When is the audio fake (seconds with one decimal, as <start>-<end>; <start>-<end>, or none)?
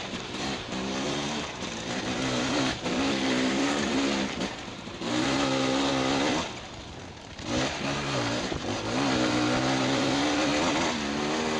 0.0-5.9; 7.3-10.5